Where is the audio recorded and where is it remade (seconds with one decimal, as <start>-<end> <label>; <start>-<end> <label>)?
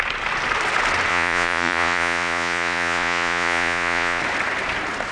0.0-1.1 recorded; 1.1-4.2 remade; 4.2-5.1 recorded